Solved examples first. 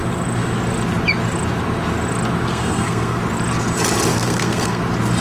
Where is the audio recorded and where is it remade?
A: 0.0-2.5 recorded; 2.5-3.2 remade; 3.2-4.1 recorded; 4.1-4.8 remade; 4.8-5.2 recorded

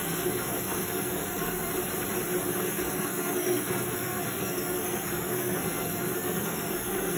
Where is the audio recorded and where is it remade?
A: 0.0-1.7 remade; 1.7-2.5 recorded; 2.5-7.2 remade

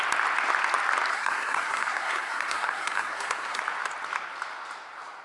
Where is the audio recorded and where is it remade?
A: 0.0-1.1 recorded; 1.1-3.6 remade; 3.6-5.2 recorded

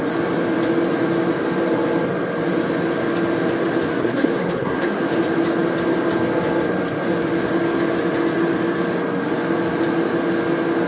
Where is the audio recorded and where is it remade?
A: 0.0-4.0 recorded; 4.0-5.0 remade; 5.0-10.9 recorded

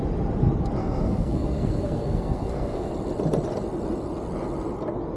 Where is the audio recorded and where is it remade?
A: 0.0-0.8 recorded; 0.8-2.9 remade; 2.9-5.2 recorded

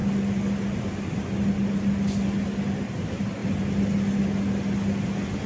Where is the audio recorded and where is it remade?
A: 0.0-5.5 recorded

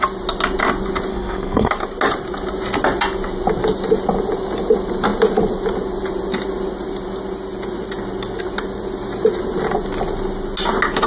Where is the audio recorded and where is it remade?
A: 0.0-1.1 recorded; 1.1-1.7 remade; 1.7-11.1 recorded

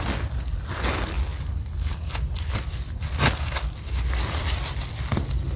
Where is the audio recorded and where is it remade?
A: 0.0-5.6 recorded